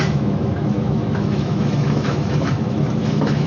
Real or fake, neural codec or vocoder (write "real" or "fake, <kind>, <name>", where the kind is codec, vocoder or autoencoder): fake, autoencoder, DAC-VAE